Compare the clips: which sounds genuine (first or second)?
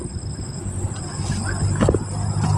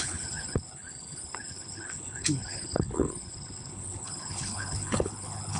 first